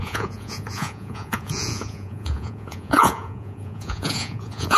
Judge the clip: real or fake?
fake